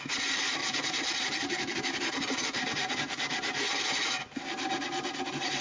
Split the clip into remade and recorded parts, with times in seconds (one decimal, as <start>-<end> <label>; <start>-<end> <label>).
0.0-0.6 recorded; 0.6-3.2 remade; 3.2-5.6 recorded